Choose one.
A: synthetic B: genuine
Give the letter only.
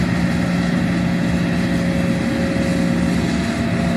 B